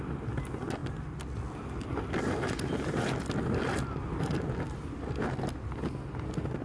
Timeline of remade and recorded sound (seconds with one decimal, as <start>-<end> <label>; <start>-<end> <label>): 0.0-6.6 recorded